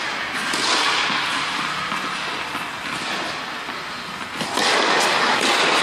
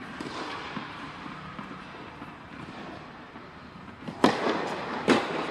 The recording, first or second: first